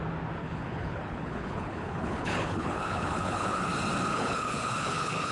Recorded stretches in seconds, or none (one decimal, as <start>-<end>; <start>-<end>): 0.0-0.4; 3.6-4.1